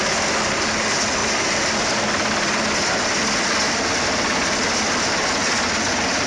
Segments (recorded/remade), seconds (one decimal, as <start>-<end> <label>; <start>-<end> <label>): 0.0-1.2 recorded; 1.2-5.0 remade; 5.0-6.3 recorded